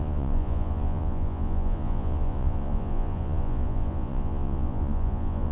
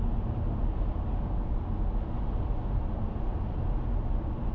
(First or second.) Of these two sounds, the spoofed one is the first